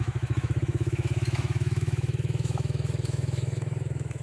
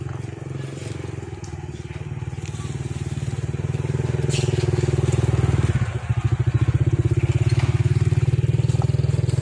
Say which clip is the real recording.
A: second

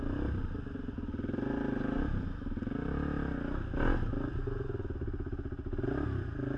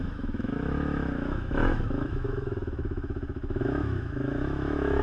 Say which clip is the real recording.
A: first